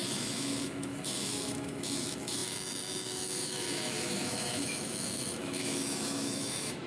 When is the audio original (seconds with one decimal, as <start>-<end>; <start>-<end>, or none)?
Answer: none